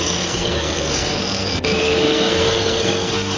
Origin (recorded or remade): remade